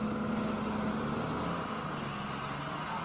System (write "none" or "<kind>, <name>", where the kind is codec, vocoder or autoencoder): none